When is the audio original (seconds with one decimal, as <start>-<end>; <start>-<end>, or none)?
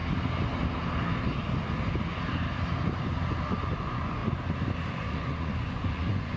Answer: 0.0-3.8; 4.2-4.9